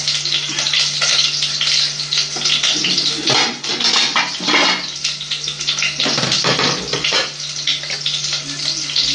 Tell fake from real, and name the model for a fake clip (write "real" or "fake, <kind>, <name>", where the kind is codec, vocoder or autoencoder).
real